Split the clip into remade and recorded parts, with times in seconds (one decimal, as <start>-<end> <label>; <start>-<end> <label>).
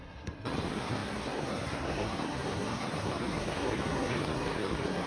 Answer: 0.0-5.1 remade